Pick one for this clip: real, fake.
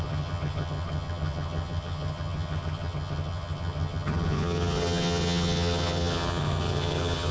fake